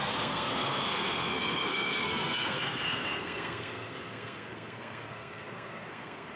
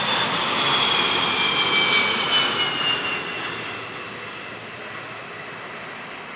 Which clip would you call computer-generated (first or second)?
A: first